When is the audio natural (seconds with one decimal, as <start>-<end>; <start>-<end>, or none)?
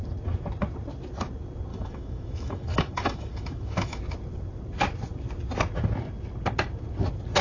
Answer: 0.0-1.7; 4.0-7.4